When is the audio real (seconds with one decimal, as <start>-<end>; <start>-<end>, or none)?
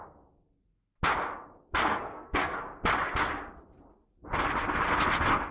0.0-1.8; 2.6-5.5